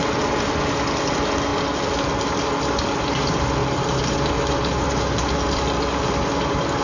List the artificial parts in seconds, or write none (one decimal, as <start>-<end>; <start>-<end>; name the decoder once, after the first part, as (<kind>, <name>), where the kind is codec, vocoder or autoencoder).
none